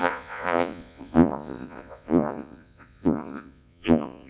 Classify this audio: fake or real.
fake